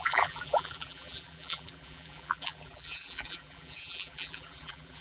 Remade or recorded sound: remade